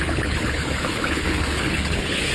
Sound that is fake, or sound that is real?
fake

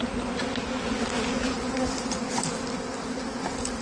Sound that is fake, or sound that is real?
real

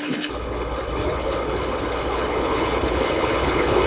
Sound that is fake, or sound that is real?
fake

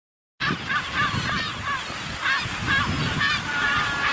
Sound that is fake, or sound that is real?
real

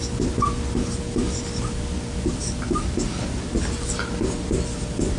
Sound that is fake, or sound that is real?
real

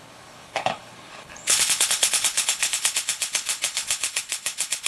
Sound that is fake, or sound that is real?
fake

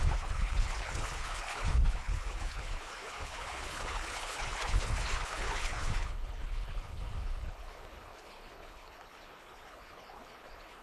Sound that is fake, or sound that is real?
fake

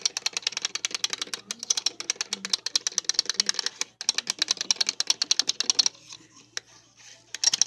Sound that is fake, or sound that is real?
real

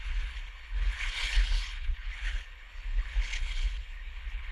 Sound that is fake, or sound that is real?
fake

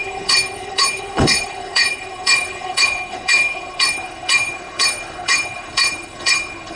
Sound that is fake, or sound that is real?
fake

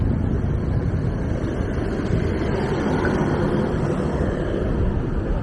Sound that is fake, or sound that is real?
real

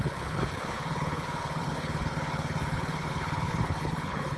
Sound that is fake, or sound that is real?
fake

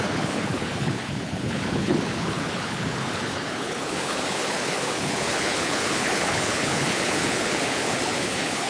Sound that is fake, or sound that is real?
fake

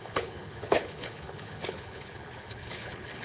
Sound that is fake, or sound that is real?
fake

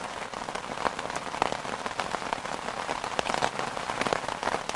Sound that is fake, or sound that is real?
real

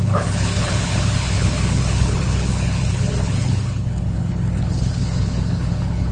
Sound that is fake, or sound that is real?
fake